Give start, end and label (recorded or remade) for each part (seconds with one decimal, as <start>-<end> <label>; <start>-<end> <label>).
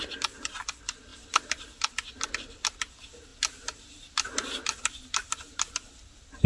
0.0-6.5 recorded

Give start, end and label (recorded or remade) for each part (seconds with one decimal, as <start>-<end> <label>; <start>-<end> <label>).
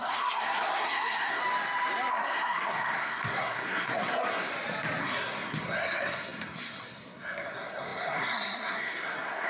0.0-1.4 remade; 1.4-2.1 recorded; 2.1-4.5 remade; 4.5-5.0 recorded; 5.0-9.5 remade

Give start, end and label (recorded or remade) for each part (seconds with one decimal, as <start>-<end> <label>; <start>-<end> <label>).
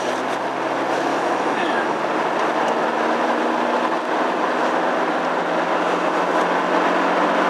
0.0-1.1 recorded; 1.1-2.0 remade; 2.0-7.5 recorded